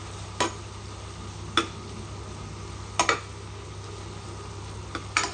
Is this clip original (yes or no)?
yes